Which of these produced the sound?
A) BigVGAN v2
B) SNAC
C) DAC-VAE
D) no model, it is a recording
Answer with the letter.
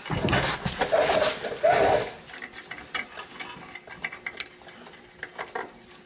D